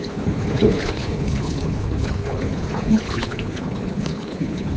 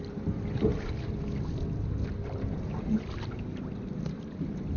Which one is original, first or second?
second